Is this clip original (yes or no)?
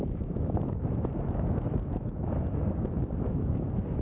no